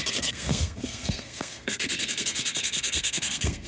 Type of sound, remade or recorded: remade